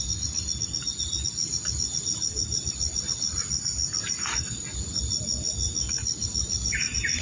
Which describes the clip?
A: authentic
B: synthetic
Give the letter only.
A